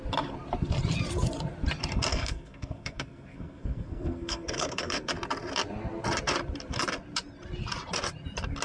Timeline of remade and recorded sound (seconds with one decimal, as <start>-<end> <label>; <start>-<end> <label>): 0.0-2.1 recorded; 2.1-5.1 remade; 5.1-8.6 recorded